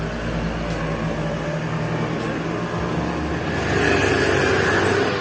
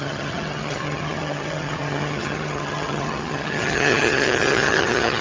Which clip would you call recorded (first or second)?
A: first